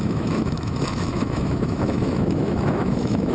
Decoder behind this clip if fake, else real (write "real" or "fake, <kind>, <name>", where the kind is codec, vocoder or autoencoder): fake, autoencoder, DAC-VAE